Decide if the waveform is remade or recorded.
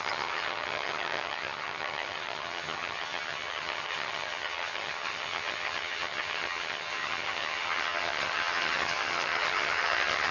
remade